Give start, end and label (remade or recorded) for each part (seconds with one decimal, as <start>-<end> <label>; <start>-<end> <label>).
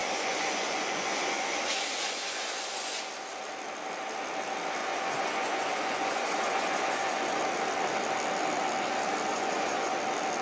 0.0-3.1 remade; 3.1-4.8 recorded; 4.8-7.4 remade; 7.4-9.3 recorded; 9.3-9.9 remade; 9.9-10.4 recorded